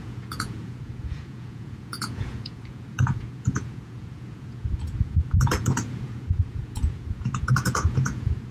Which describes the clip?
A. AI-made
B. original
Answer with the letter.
A